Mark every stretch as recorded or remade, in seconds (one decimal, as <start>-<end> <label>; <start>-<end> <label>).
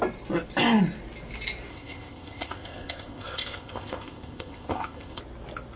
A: 0.0-1.7 recorded; 1.7-5.2 remade; 5.2-5.8 recorded